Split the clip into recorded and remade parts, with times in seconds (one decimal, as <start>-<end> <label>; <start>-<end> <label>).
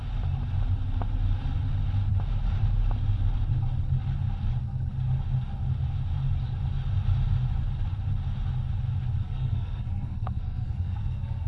0.0-9.2 recorded; 9.2-11.5 remade